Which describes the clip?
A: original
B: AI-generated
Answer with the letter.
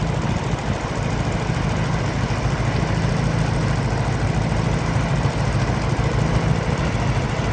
A